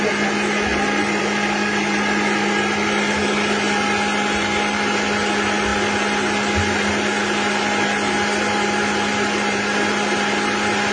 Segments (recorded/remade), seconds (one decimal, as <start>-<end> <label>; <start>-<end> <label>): 0.0-10.9 recorded

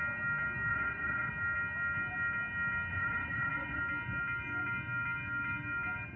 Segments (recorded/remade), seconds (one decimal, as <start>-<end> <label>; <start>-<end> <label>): 0.0-0.7 recorded; 0.7-1.3 remade; 1.3-2.9 recorded; 2.9-3.8 remade; 3.8-6.2 recorded

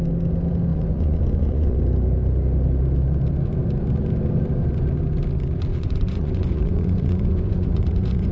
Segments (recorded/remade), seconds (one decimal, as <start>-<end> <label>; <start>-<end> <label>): 0.0-0.7 recorded; 0.7-1.8 remade; 1.8-5.7 recorded; 5.7-8.3 remade

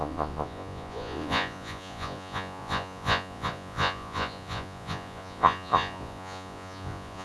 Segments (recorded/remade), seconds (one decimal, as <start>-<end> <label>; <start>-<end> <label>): 0.0-7.2 remade

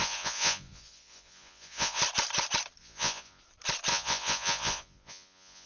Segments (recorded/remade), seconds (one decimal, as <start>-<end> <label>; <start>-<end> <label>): 0.0-2.0 remade; 2.0-2.8 recorded; 2.8-3.4 remade; 3.4-3.9 recorded; 3.9-5.7 remade

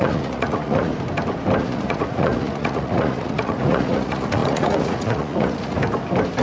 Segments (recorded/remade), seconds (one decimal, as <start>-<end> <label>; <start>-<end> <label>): 0.0-0.9 remade; 0.9-1.6 recorded; 1.6-5.8 remade; 5.8-6.4 recorded

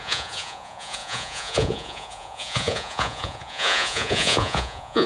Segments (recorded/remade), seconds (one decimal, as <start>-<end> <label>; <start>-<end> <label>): 0.0-5.1 remade

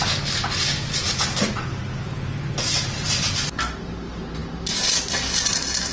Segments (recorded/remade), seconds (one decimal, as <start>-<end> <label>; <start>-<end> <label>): 0.0-5.9 recorded